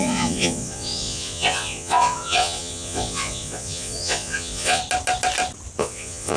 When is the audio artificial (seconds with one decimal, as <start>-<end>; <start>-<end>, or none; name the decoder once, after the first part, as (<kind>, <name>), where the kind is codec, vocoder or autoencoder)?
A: 0.0-4.8 (vocoder, Vocos); 5.8-6.4